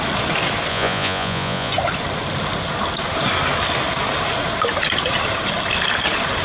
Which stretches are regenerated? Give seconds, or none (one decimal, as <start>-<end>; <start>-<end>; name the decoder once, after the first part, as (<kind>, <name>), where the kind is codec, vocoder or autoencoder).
0.7-1.7 (vocoder, Vocos)